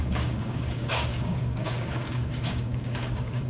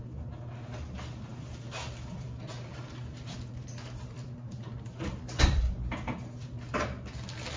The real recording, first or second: second